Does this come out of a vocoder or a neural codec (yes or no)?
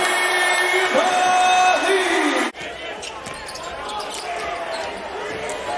no